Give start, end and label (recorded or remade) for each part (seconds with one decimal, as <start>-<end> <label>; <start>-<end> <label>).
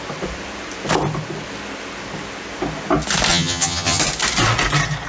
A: 0.0-3.3 recorded; 3.3-4.0 remade; 4.0-5.1 recorded